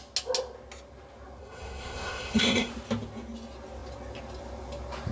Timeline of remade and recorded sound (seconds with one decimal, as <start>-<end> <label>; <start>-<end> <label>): 0.0-1.4 recorded; 1.4-2.7 remade; 2.7-5.1 recorded